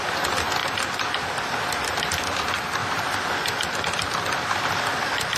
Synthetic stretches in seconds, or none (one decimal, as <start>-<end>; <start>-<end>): 0.6-2.4; 2.8-4.5